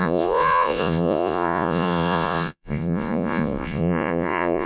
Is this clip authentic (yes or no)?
no